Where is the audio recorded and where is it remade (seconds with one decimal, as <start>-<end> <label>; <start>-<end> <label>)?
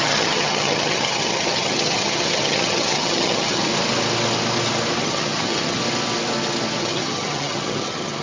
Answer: 0.0-3.7 remade; 3.7-5.0 recorded; 5.0-5.8 remade; 5.8-6.8 recorded; 6.8-8.2 remade